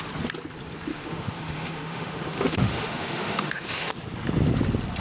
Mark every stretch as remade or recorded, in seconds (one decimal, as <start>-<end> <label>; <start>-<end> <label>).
0.0-0.9 recorded; 0.9-3.9 remade; 3.9-5.0 recorded